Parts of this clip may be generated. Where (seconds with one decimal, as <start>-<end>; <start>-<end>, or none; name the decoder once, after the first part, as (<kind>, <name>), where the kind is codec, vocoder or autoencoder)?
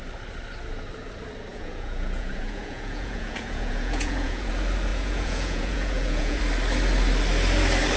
1.5-4.5 (vocoder, Vocos); 4.9-6.4